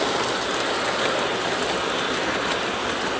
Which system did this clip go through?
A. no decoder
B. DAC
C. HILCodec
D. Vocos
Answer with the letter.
A